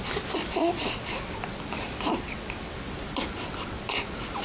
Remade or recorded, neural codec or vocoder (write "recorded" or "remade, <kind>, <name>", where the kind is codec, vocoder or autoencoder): recorded